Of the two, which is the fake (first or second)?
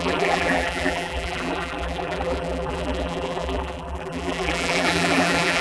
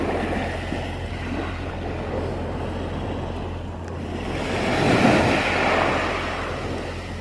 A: first